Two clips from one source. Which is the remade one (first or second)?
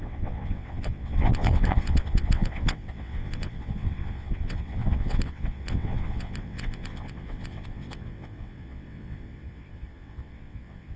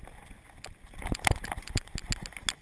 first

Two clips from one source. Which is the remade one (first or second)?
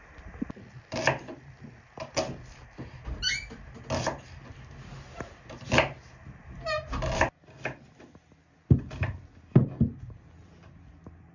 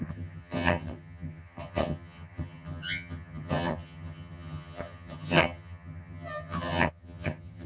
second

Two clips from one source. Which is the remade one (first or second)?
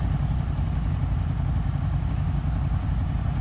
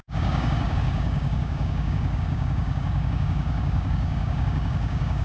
second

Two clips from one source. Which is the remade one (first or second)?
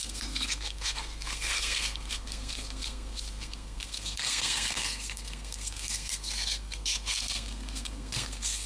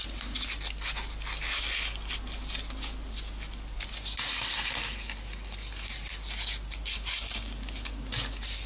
first